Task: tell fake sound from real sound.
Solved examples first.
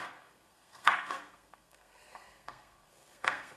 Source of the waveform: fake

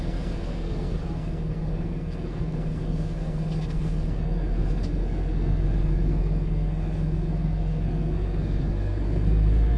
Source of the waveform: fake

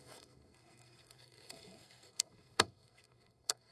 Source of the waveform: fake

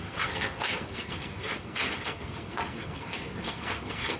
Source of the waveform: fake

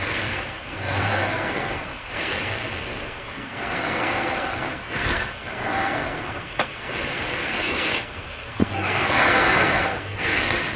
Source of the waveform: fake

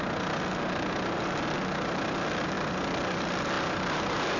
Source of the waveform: real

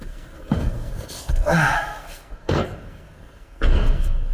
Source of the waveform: fake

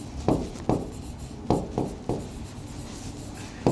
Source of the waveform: real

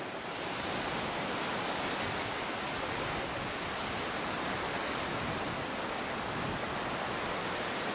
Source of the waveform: real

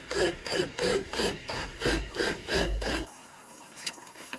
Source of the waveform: fake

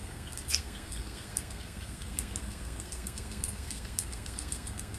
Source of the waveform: fake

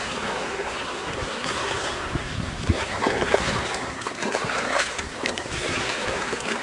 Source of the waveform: fake